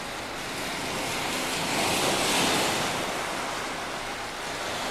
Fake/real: real